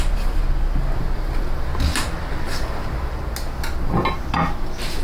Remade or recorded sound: recorded